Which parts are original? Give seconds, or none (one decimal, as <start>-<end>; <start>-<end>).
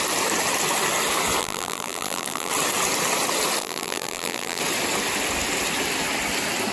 0.0-1.4; 2.5-3.6; 4.6-6.7